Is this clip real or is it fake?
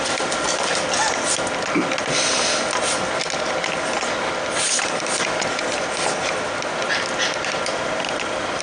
real